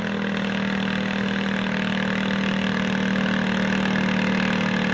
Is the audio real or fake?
real